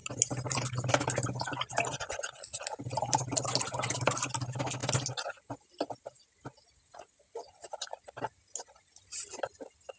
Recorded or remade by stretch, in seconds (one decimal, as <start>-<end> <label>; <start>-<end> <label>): 0.0-10.0 recorded